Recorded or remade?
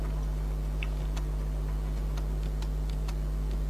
recorded